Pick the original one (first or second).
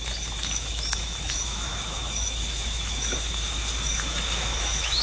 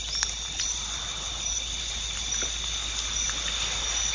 second